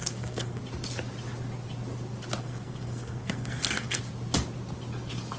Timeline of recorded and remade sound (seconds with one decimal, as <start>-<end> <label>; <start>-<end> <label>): 0.0-0.6 remade; 0.6-2.4 recorded; 2.4-4.0 remade; 4.0-5.4 recorded